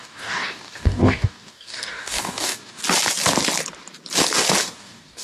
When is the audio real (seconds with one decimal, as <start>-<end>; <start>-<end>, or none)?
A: 2.8-4.6